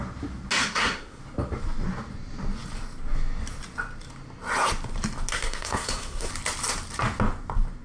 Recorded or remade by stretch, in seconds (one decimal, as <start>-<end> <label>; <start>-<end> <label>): 0.0-0.6 recorded; 0.6-1.2 remade; 1.2-5.3 recorded; 5.3-6.3 remade; 6.3-7.8 recorded